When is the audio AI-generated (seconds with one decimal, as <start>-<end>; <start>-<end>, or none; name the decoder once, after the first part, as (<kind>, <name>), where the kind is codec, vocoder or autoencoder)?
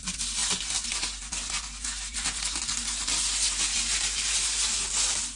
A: none